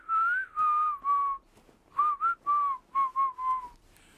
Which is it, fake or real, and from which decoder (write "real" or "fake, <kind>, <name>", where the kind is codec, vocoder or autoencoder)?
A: real